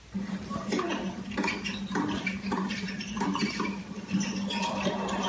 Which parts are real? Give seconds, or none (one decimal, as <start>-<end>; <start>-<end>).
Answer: 3.9-4.5